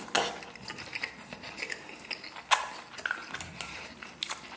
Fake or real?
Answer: real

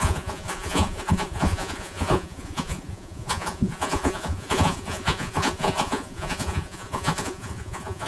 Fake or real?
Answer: fake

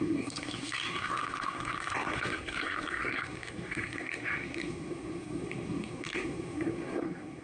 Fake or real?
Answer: fake